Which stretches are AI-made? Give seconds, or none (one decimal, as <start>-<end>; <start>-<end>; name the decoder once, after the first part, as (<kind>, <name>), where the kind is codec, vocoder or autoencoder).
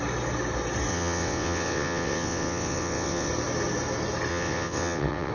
0.9-3.3 (vocoder, WaveNeXt); 4.3-5.3